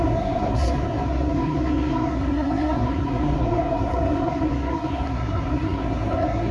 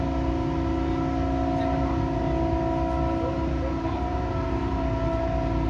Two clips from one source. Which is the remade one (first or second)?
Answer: first